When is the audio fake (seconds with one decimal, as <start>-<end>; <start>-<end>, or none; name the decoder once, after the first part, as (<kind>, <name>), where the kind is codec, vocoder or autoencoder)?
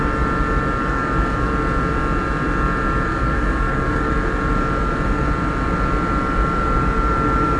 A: 0.8-1.5 (codec, DAC); 3.1-4.1